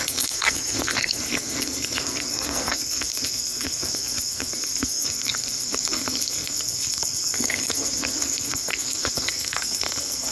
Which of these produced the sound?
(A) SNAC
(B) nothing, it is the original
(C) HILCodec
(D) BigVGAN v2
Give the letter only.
A